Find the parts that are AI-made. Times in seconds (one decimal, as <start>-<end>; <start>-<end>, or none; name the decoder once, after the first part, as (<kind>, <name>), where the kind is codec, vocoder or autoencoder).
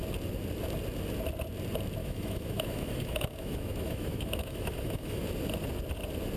2.0-5.2 (autoencoder, DAC-VAE)